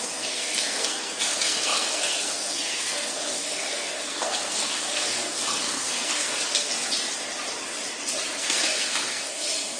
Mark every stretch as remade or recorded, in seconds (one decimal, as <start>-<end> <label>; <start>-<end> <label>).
0.0-6.7 remade; 6.7-8.4 recorded; 8.4-9.8 remade